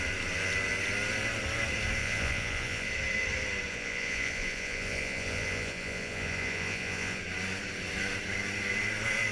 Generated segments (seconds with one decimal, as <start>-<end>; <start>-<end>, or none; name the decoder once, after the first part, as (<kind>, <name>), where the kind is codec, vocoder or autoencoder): 2.0-2.9 (vocoder, Vocos); 3.7-7.2